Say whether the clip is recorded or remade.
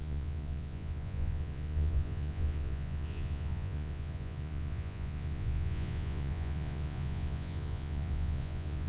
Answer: remade